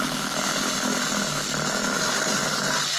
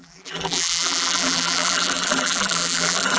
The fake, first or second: second